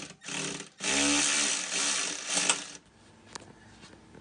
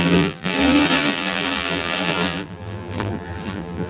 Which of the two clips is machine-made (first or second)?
second